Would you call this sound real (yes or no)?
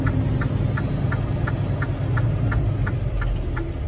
yes